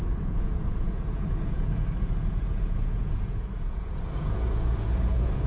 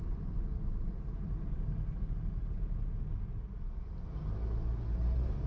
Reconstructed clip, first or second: first